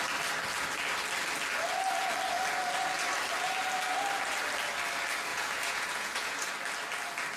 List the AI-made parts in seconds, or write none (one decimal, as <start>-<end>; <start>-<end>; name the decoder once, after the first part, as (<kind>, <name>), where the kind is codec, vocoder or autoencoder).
5.3-6.5 (vocoder, Vocos)